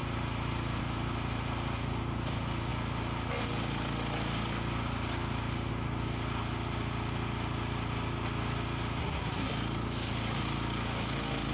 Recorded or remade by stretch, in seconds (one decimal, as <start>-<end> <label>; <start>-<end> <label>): 0.0-9.0 recorded; 9.0-9.5 remade; 9.5-11.5 recorded